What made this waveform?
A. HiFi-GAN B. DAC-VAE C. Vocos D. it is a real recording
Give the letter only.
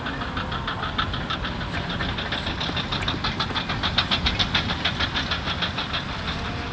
D